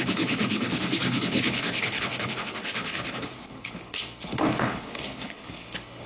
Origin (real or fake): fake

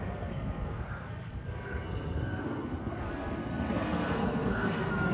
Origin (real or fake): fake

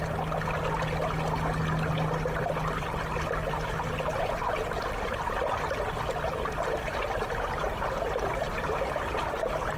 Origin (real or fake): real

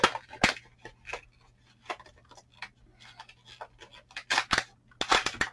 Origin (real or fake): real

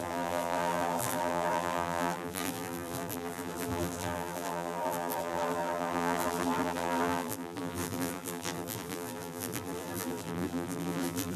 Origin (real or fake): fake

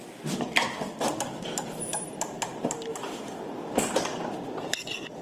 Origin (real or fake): real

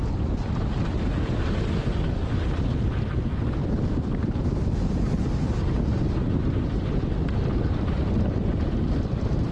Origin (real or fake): real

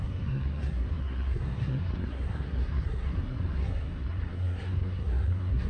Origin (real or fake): fake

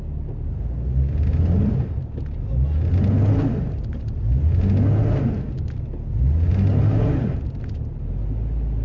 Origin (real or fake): real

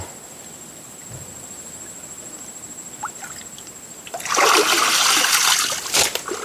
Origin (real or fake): real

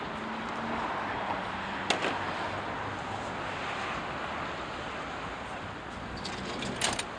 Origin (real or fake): real